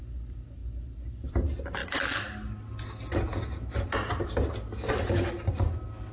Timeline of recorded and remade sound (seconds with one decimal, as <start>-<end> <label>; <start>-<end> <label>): 0.0-6.1 recorded